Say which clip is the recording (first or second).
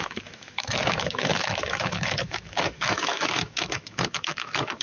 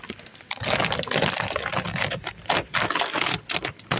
second